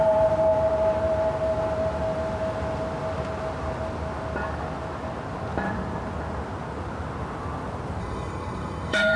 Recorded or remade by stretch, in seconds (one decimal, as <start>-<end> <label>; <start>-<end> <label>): 0.0-8.0 recorded; 8.0-9.2 remade